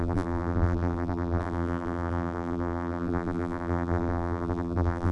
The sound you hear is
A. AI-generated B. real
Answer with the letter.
A